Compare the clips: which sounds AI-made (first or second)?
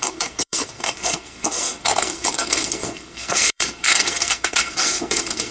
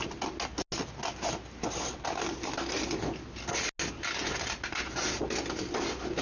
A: first